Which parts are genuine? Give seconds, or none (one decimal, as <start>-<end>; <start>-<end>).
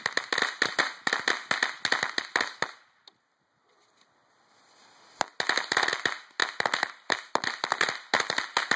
0.0-8.8